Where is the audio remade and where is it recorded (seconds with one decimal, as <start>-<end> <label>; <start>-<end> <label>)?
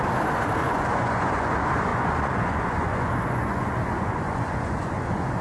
0.0-0.6 recorded; 0.6-1.5 remade; 1.5-1.9 recorded; 1.9-5.4 remade